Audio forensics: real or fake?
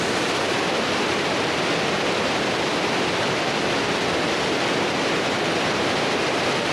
real